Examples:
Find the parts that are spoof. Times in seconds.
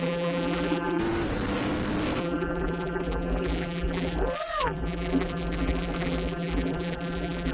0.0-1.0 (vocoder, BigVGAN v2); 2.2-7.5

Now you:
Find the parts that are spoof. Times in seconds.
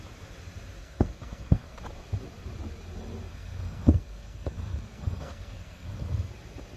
0.8-1.8 (codec, SNAC); 3.3-6.3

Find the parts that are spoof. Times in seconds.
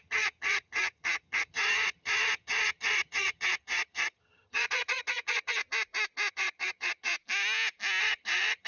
0.0-5.6 (vocoder, HiFi-GAN); 6.3-7.1; 8.0-8.7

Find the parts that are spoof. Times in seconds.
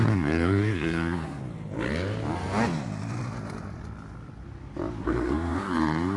0.0-1.4 (codec, SNAC); 5.0-6.2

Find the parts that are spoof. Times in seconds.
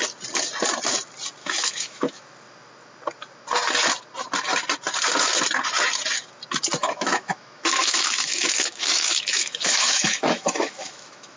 1.4-2.2 (autoencoder, DAC-VAE); 6.8-11.4